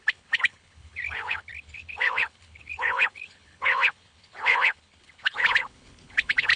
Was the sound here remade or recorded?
remade